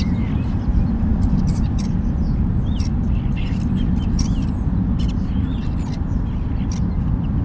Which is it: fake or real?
real